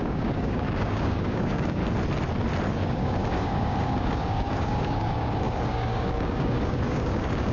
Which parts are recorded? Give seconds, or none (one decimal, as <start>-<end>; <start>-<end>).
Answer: 1.8-2.7